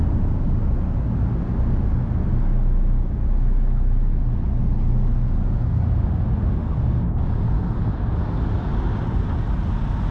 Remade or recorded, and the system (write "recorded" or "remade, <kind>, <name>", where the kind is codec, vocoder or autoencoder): recorded